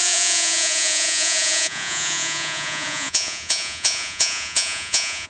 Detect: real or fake fake